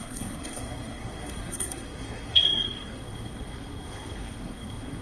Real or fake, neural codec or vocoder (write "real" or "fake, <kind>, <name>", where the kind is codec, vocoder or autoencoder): fake, codec, SNAC